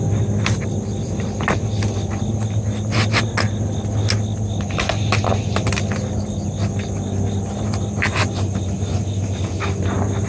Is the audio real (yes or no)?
yes